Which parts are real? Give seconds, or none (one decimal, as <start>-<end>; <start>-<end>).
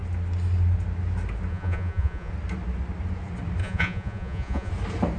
0.0-1.5; 2.3-3.6; 4.7-5.2